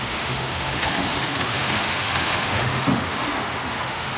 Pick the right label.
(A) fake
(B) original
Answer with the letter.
A